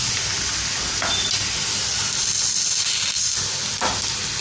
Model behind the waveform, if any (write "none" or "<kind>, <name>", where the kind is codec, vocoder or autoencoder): none